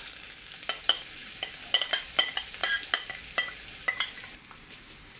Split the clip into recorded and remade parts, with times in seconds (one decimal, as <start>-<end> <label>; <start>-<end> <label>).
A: 0.0-5.2 recorded